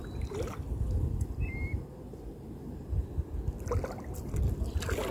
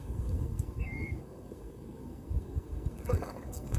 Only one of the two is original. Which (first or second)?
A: first